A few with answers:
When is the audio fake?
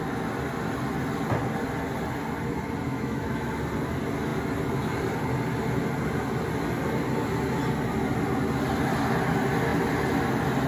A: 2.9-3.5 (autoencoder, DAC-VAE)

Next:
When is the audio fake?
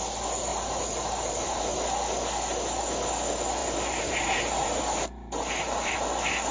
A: 0.5-1.6 (vocoder, BigVGAN v2); 3.6-5.9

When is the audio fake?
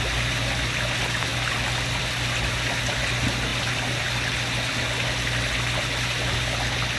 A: 3.5-4.0 (vocoder, BigVGAN v2)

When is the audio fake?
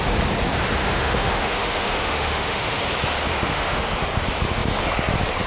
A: 0.8-2.8 (autoencoder, DAC-VAE); 3.2-3.8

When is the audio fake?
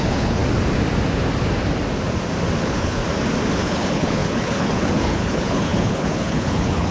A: 0.0-0.4 (codec, HILCodec); 2.6-3.0; 3.5-6.9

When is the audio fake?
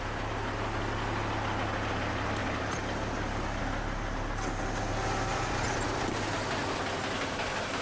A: 5.3-6.0 (vocoder, BigVGAN v2)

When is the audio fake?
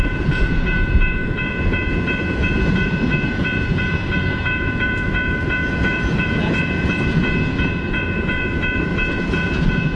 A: 0.0-10.0 (vocoder, Vocos)